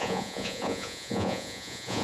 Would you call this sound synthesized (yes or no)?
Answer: yes